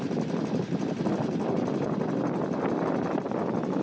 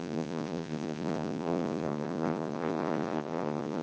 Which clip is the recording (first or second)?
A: first